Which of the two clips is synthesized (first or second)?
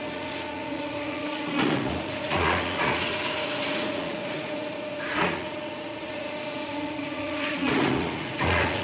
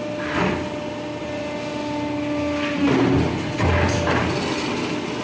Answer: first